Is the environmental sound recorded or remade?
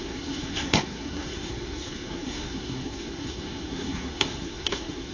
remade